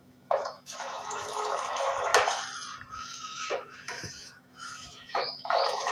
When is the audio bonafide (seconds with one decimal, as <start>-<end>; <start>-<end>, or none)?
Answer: 2.1-2.9